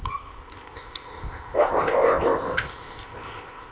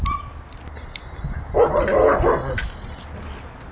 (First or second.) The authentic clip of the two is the second